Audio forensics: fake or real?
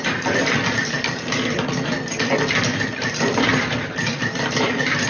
real